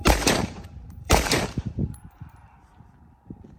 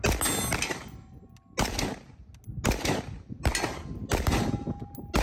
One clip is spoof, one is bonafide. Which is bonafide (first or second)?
second